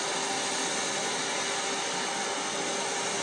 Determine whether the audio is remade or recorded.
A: recorded